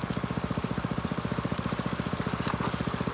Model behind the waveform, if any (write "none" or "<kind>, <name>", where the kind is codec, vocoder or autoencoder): none